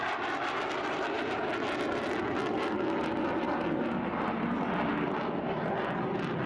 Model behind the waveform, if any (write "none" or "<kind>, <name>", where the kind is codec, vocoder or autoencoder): none